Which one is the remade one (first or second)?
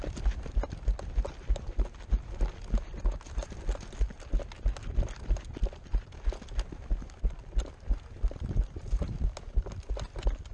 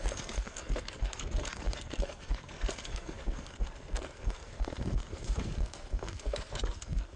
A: second